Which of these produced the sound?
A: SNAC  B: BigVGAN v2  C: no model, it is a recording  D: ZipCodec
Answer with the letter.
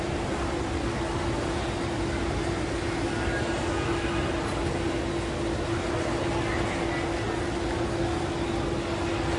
C